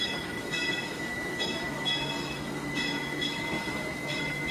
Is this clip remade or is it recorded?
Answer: remade